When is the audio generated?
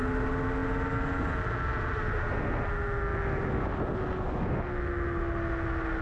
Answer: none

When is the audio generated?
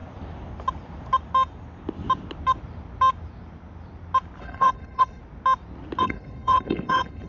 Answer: 4.4-5.2 (codec, HILCodec); 6.0-7.3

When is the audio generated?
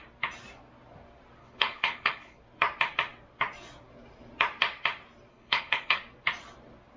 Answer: 1.4-2.4 (codec, HILCodec); 5.3-6.0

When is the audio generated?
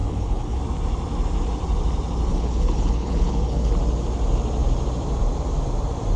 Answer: 0.0-0.6 (codec, HILCodec); 2.3-3.7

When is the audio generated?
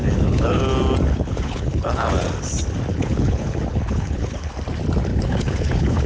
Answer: 0.0-0.6 (codec, HILCodec); 1.1-2.1; 2.9-4.5; 5.1-6.1